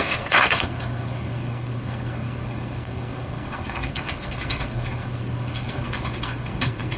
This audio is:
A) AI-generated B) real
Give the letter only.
A